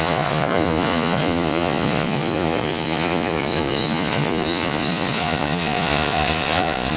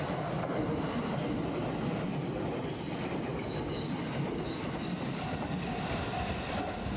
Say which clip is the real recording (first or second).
second